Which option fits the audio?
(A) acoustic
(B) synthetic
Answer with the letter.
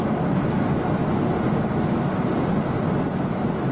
A